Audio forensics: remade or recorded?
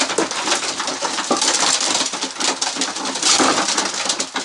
recorded